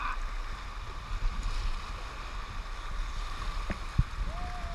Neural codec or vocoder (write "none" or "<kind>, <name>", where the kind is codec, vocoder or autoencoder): none